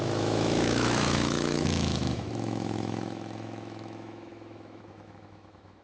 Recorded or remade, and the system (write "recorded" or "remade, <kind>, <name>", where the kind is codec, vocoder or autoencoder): remade, autoencoder, DAC-VAE